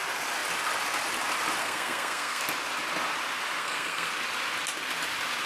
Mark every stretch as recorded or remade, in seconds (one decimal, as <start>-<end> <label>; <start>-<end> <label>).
0.0-1.6 recorded; 1.6-2.4 remade; 2.4-3.6 recorded; 3.6-4.1 remade; 4.1-5.5 recorded